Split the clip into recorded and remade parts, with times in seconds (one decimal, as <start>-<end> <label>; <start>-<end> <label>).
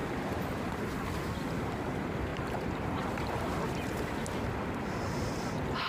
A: 0.0-0.9 remade; 0.9-2.3 recorded; 2.3-3.5 remade; 3.5-5.9 recorded